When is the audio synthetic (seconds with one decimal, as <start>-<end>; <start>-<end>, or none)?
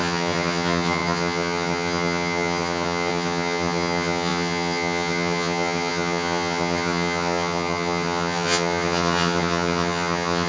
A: 0.0-10.5